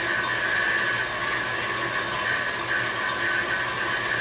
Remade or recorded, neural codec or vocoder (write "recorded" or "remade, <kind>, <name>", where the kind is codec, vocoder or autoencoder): recorded